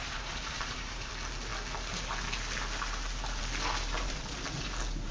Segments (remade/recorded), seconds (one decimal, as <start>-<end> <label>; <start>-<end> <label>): 0.0-1.1 remade; 1.1-5.1 recorded